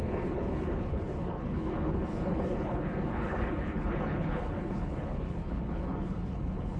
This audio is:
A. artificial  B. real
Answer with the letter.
A